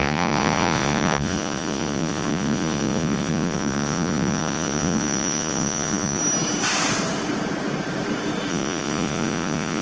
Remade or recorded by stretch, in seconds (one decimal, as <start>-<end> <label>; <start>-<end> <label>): 0.0-6.2 remade; 6.2-8.5 recorded; 8.5-9.8 remade